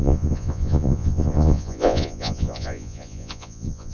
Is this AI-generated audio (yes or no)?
yes